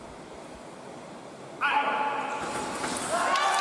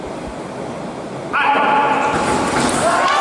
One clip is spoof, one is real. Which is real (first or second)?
first